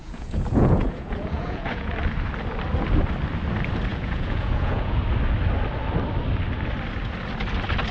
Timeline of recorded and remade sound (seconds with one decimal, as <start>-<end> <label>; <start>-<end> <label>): 0.0-1.9 remade; 1.9-3.9 recorded; 3.9-5.0 remade; 5.0-7.9 recorded